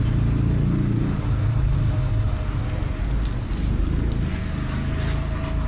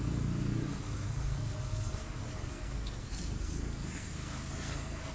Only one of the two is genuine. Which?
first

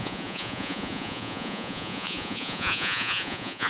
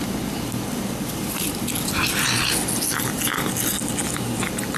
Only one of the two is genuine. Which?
second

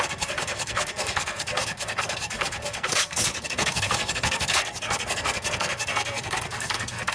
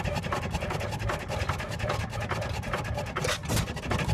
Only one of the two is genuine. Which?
second